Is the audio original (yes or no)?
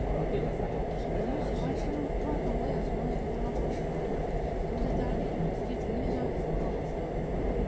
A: yes